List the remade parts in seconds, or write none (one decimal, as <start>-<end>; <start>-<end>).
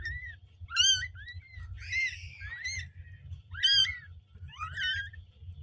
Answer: none